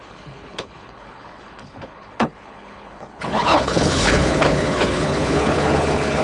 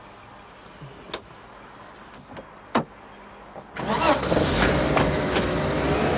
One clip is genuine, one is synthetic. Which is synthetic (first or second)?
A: first